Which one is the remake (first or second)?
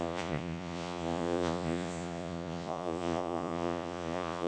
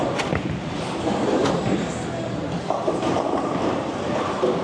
first